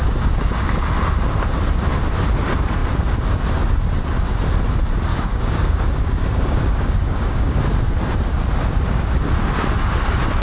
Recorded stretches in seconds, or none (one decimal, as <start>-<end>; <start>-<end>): 0.0-5.1; 7.6-10.4